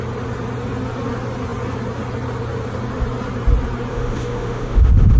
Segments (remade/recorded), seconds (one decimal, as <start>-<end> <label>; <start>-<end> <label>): 0.0-3.9 recorded; 3.9-5.2 remade